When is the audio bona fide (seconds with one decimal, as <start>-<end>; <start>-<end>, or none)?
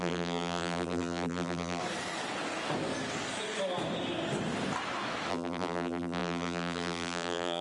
1.8-5.3